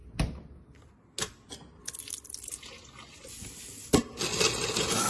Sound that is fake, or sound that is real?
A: real